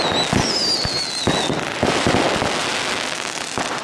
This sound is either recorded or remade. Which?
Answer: recorded